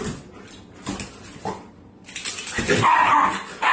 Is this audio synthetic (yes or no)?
no